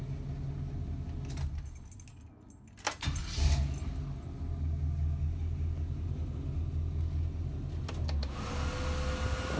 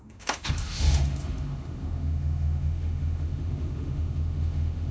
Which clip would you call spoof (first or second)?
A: second